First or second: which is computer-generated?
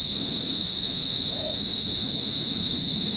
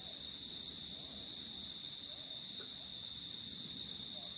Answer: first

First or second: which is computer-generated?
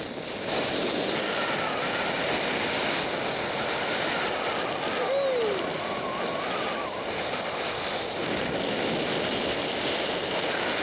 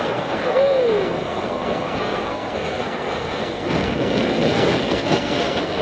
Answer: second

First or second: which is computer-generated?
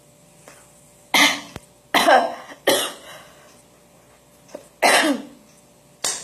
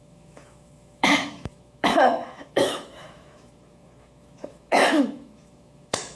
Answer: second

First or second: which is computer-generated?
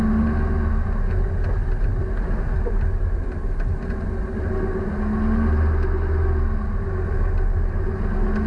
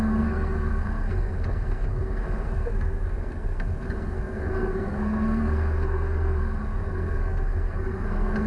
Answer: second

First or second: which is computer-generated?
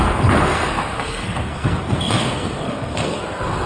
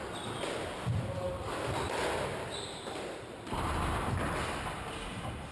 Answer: first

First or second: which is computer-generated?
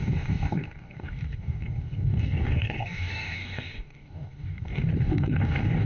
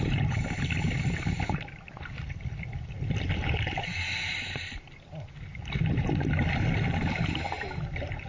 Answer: first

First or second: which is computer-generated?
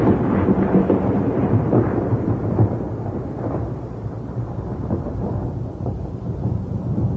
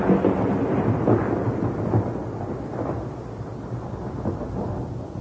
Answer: first